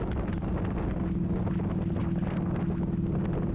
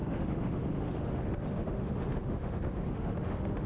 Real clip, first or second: first